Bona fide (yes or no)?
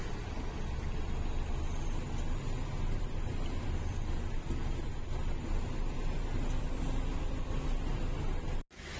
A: yes